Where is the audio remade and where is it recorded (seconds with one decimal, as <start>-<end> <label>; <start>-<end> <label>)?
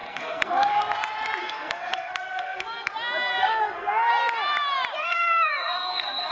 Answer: 0.0-0.8 remade; 0.8-1.4 recorded; 1.4-2.9 remade; 2.9-3.4 recorded; 3.4-4.1 remade; 4.1-5.0 recorded; 5.0-6.3 remade